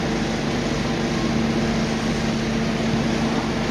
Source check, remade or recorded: recorded